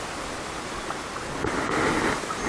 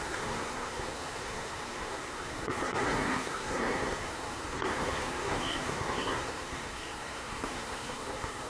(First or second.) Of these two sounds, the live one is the first